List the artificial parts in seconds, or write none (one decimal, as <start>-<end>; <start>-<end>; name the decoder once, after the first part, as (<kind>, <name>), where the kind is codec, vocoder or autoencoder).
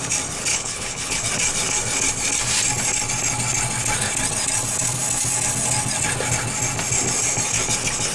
0.5-1.2 (codec, HILCodec)